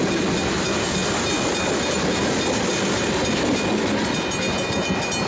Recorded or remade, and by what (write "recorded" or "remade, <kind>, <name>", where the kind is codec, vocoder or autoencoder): recorded